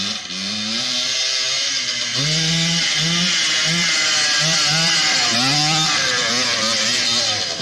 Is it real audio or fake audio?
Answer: real